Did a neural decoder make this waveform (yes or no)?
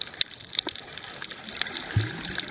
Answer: no